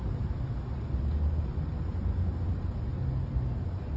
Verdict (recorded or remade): recorded